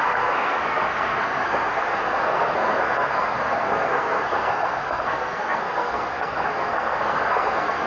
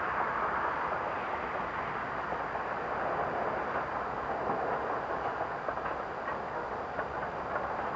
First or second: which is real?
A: second